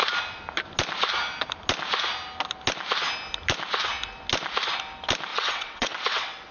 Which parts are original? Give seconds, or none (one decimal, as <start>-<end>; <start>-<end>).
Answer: 0.0-5.3